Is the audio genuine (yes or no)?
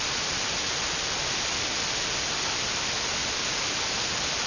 yes